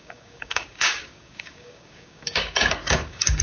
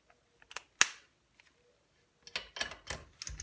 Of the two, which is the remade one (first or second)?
first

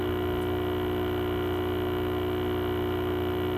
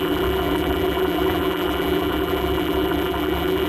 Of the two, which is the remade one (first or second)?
second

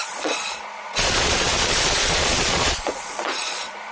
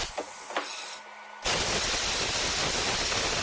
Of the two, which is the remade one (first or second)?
first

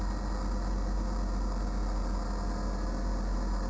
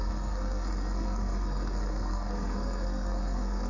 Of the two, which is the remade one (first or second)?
second